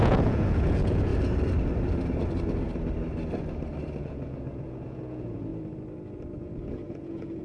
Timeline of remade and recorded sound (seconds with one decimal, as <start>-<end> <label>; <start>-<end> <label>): 0.0-1.1 remade; 1.1-4.0 recorded; 4.0-5.5 remade; 5.5-6.3 recorded; 6.3-7.4 remade